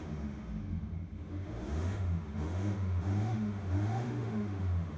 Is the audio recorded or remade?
remade